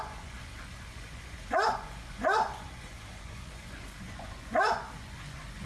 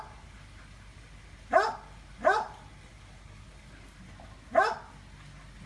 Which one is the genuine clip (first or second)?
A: second